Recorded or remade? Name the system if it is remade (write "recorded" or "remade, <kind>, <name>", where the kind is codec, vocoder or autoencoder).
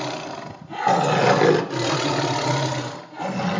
recorded